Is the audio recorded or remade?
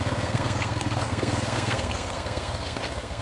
remade